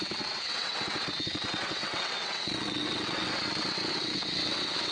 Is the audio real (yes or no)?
no